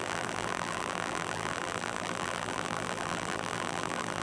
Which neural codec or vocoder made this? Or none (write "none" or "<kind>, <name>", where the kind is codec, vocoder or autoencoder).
vocoder, BigVGAN v2